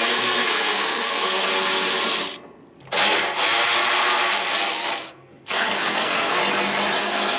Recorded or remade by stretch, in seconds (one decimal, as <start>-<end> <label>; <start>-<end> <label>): 0.0-1.5 remade; 1.5-5.0 recorded; 5.0-6.4 remade; 6.4-7.0 recorded; 7.0-7.4 remade